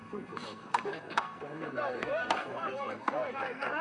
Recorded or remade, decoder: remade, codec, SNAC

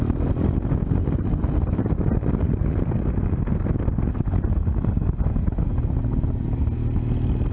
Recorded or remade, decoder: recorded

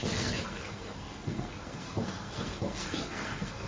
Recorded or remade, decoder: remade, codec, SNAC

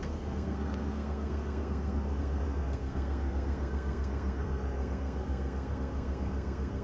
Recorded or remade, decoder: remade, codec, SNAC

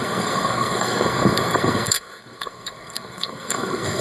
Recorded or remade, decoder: remade, codec, SNAC